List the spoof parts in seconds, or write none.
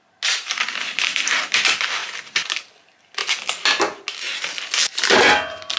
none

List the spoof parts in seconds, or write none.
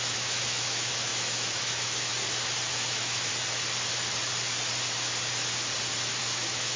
0.0-2.1; 2.7-3.3; 6.2-6.8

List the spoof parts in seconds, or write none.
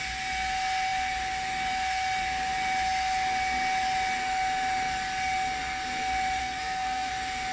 6.4-7.1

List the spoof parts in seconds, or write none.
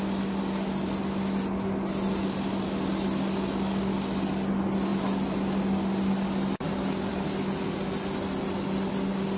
none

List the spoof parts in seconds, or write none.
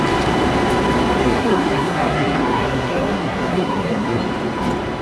1.2-4.2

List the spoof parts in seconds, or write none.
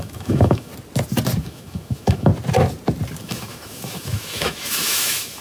0.0-0.7; 1.4-2.3; 3.2-5.4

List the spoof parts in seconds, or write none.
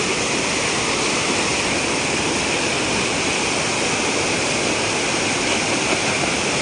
none